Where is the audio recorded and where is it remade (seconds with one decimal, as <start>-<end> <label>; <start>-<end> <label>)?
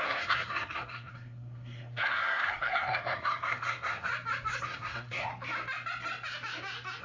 0.0-4.1 remade; 4.1-4.6 recorded; 4.6-5.3 remade; 5.3-7.0 recorded